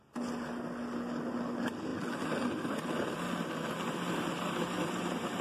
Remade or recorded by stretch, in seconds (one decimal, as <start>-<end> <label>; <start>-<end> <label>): 0.0-5.4 recorded

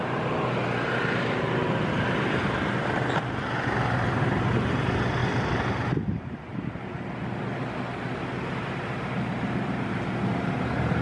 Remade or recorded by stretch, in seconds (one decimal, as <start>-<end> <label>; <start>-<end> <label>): 0.0-11.0 recorded

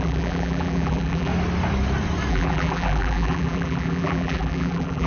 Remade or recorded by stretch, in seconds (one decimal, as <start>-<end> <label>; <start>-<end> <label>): 0.0-1.3 remade; 1.3-2.3 recorded; 2.3-5.1 remade

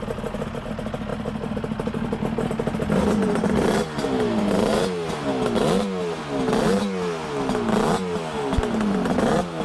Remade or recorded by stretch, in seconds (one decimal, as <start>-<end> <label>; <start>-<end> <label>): 0.0-9.6 recorded

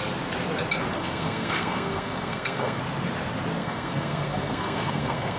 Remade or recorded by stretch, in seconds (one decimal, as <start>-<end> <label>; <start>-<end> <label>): 0.0-0.9 recorded; 0.9-2.8 remade; 2.8-3.6 recorded; 3.6-5.4 remade

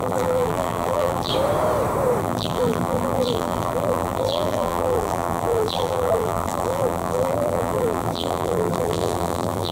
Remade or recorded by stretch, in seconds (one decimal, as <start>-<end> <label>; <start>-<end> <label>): 0.0-1.3 remade; 1.3-2.2 recorded; 2.2-9.7 remade

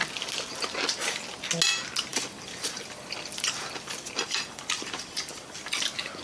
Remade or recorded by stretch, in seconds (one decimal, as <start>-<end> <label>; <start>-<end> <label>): 0.0-2.1 recorded; 2.1-5.8 remade; 5.8-6.2 recorded

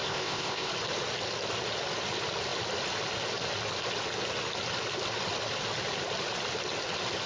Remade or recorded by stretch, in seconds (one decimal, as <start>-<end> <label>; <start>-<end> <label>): 0.0-0.7 remade; 0.7-7.3 recorded